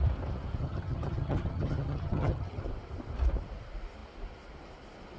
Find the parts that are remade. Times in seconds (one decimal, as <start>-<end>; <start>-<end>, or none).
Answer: 0.6-2.6